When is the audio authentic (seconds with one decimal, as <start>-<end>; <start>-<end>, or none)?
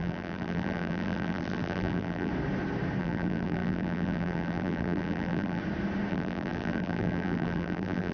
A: 2.3-3.0; 5.6-6.1